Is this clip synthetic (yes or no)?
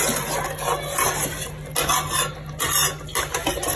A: no